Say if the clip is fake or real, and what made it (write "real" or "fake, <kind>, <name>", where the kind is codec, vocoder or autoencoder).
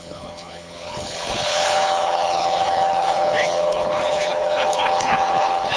fake, codec, HILCodec